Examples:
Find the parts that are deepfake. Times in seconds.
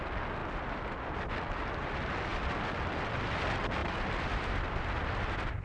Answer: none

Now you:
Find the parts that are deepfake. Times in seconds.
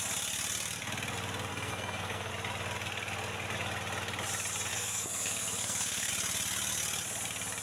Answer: 1.5-2.3 (codec, SNAC); 4.7-6.1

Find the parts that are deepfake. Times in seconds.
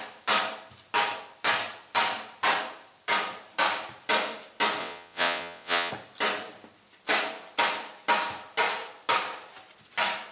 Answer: 4.8-5.9 (vocoder, WaveNeXt)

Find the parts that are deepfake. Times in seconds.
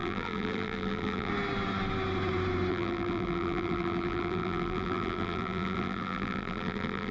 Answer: 0.0-1.3 (vocoder, BigVGAN v2); 2.7-7.1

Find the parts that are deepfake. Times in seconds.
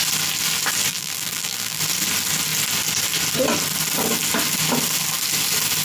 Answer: 0.9-1.8 (vocoder, BigVGAN v2)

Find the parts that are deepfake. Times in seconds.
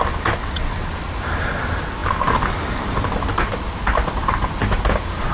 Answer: 0.4-0.9 (vocoder, WaveNeXt)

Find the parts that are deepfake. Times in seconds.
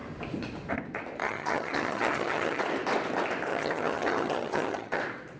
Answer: 1.2-2.6 (vocoder, HiFi-GAN); 3.5-5.0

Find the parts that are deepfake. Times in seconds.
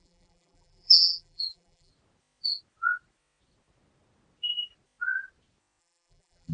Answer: 0.0-1.9 (vocoder, BigVGAN v2); 5.8-6.5